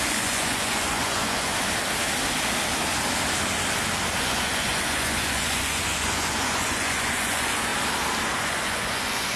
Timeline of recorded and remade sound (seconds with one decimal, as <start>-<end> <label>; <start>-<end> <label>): 0.0-1.5 remade; 1.5-4.2 recorded; 4.2-7.7 remade; 7.7-8.4 recorded; 8.4-9.4 remade